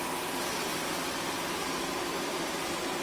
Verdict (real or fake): real